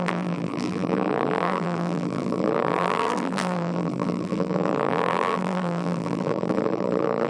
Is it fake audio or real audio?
fake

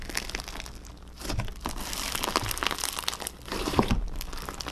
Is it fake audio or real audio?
real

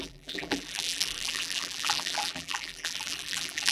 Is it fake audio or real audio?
fake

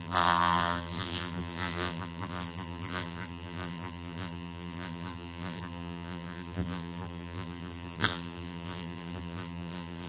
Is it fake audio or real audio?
fake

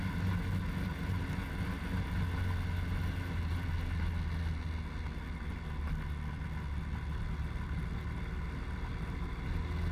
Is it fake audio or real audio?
real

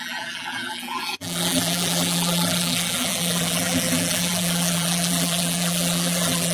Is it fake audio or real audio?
fake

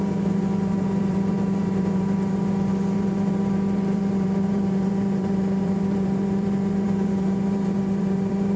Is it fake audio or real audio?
fake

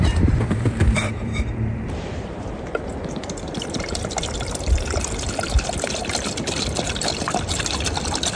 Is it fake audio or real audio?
fake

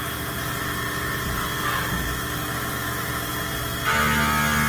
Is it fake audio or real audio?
real